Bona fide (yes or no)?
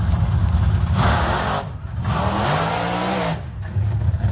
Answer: yes